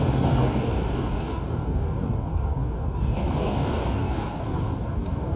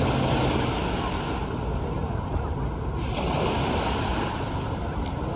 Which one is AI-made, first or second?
first